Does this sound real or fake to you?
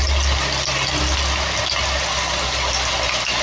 real